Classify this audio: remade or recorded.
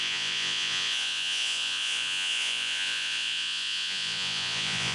remade